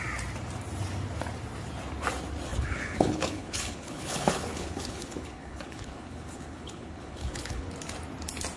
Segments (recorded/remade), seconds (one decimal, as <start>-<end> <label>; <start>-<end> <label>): 0.0-2.5 recorded; 2.5-7.7 remade; 7.7-8.6 recorded

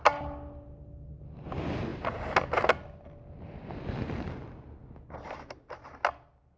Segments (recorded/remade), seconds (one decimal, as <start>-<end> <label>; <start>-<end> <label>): 0.0-6.6 recorded

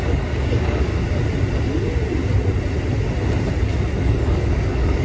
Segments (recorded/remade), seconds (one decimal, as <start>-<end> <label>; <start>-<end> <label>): 0.0-0.9 remade; 0.9-3.9 recorded; 3.9-5.0 remade

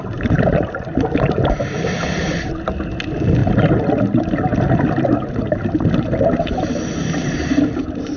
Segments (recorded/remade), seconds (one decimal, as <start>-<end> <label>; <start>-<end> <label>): 0.0-8.2 recorded

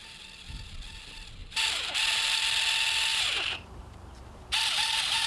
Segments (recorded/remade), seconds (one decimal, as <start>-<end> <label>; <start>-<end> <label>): 0.0-1.4 recorded; 1.4-1.9 remade; 1.9-3.1 recorded; 3.1-5.3 remade

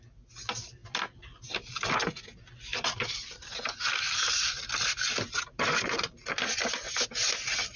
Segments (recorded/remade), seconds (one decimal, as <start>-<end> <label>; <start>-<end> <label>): 0.0-7.8 recorded